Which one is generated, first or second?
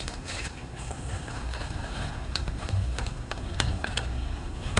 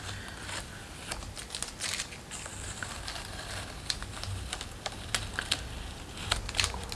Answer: first